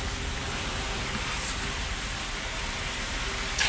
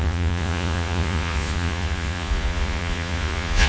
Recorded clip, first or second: first